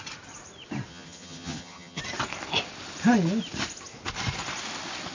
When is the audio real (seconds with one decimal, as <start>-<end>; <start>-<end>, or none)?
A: 0.0-0.9; 2.0-5.1